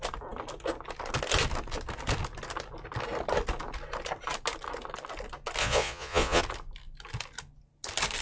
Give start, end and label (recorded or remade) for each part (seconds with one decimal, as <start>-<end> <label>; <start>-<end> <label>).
0.0-5.6 recorded; 5.6-6.4 remade; 6.4-8.2 recorded